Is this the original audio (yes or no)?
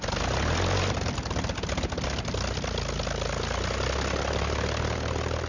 yes